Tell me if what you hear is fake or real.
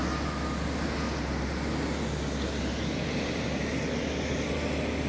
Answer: real